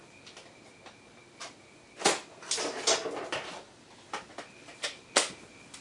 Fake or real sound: real